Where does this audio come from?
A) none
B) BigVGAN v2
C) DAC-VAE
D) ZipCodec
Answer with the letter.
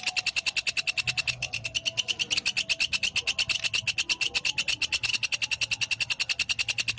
A